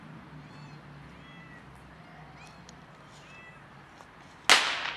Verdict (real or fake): real